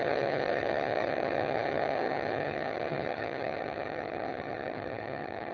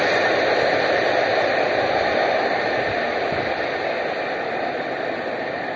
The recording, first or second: second